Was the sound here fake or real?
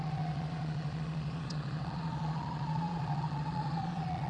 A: fake